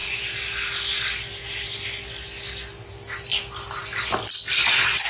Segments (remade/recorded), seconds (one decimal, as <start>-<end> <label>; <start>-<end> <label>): 0.0-5.1 recorded

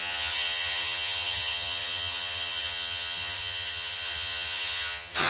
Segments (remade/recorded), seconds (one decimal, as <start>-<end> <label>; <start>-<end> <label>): 0.0-5.3 remade

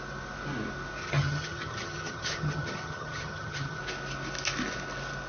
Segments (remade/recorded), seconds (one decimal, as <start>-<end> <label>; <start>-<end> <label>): 0.0-1.0 recorded; 1.0-3.8 remade; 3.8-5.3 recorded

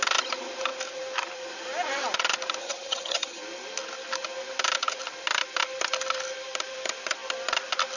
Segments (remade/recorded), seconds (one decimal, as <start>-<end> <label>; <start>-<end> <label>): 0.0-2.6 recorded; 2.6-3.4 remade; 3.4-8.0 recorded

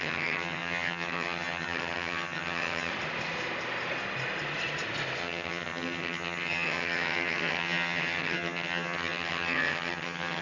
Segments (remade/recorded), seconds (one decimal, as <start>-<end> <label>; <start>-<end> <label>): 0.0-2.9 remade; 2.9-5.2 recorded; 5.2-10.4 remade

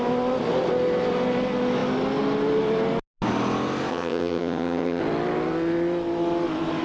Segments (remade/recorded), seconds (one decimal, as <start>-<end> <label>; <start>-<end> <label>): 0.0-3.9 recorded; 3.9-5.0 remade; 5.0-6.8 recorded

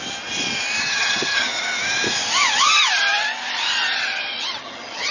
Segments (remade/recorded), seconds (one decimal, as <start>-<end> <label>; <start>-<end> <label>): 0.0-0.8 recorded; 0.8-1.5 remade; 1.5-4.6 recorded; 4.6-5.1 remade